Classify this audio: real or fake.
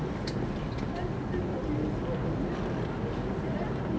real